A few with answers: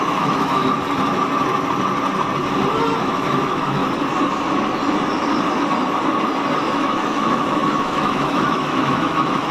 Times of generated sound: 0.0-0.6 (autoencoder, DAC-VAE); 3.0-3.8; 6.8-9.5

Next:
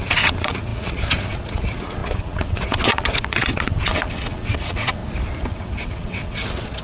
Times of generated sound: 0.0-5.0 (vocoder, WaveNeXt); 5.5-6.8

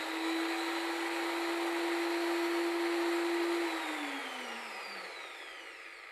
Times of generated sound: 4.2-5.1 (vocoder, BigVGAN v2)

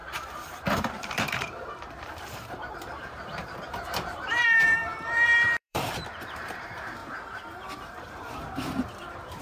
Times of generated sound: 0.0-7.0 (vocoder, BigVGAN v2); 7.8-9.4

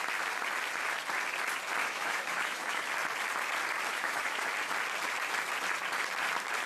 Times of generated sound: 1.8-2.8 (autoencoder, DAC-VAE); 3.9-4.4

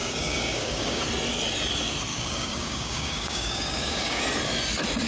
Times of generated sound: 0.0-1.0 (codec, DAC); 2.1-4.2

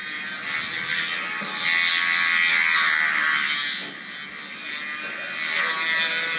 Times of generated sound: none

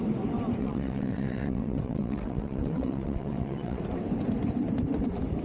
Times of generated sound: 0.6-3.8 (vocoder, WaveNeXt)